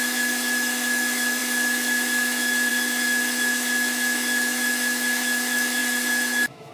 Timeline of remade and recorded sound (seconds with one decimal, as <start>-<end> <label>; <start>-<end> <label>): 0.0-6.7 remade